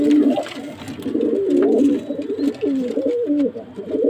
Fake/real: real